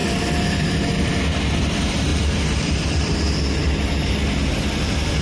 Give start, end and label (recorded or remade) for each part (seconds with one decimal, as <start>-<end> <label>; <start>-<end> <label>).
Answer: 0.0-0.7 remade; 0.7-2.1 recorded; 2.1-4.1 remade; 4.1-5.2 recorded